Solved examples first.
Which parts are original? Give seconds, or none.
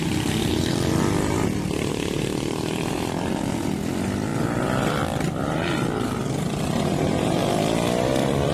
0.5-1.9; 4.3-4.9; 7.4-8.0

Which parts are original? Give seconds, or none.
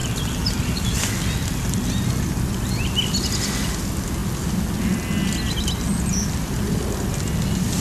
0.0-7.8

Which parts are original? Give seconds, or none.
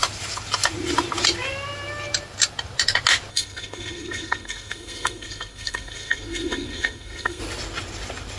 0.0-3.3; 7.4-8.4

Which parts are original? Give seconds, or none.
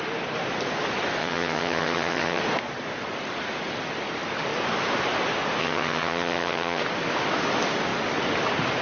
0.0-1.2; 2.4-5.6; 6.8-8.8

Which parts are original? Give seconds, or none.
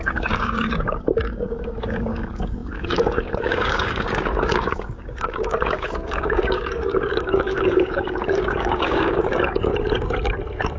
9.7-10.8